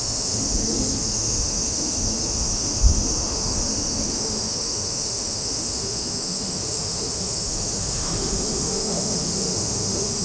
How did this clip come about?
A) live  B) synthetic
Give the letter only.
B